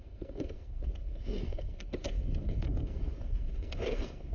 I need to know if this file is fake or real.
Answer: fake